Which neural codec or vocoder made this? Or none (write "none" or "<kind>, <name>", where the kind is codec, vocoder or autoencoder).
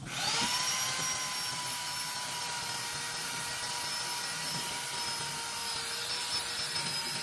none